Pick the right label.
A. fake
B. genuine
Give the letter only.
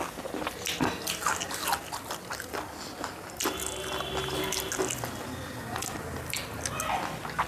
B